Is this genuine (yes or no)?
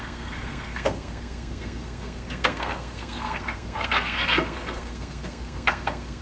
no